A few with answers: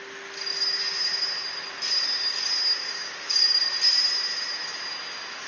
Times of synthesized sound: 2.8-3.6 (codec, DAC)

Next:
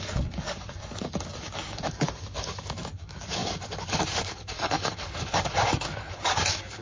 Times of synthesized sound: 0.0-6.8 (codec, DAC)